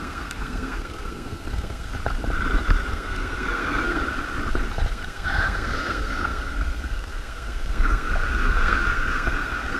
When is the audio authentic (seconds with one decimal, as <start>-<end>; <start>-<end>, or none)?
1.9-2.9; 4.0-4.9